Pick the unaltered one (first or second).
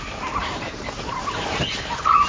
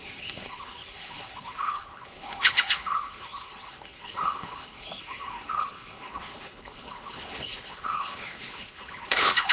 first